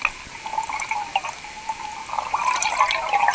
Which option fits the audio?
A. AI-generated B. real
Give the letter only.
B